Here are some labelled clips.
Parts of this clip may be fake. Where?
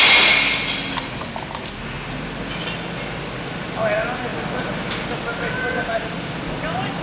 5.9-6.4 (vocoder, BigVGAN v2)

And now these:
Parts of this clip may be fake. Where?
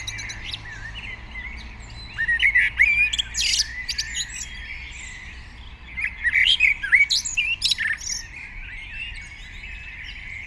6.4-7.0 (vocoder, BigVGAN v2)